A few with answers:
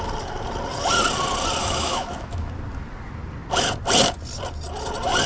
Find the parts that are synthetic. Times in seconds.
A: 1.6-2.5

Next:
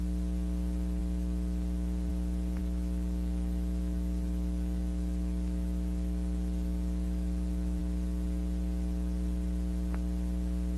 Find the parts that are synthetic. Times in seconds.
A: 2.6-7.8

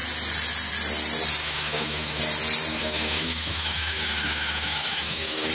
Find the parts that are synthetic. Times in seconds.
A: 1.4-2.2; 2.7-5.5

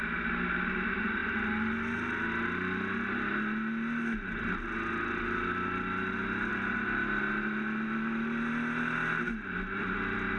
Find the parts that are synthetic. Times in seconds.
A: none

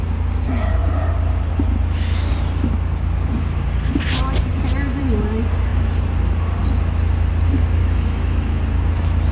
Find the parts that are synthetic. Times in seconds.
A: 7.8-8.6

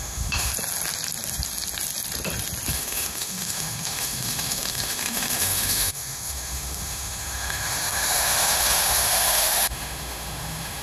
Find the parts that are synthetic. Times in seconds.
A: 0.0-0.5; 2.7-10.8

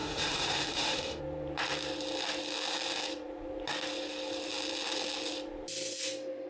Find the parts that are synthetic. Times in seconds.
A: 0.0-1.2